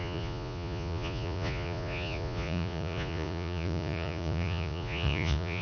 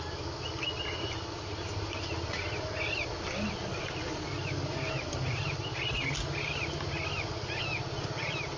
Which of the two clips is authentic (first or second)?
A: second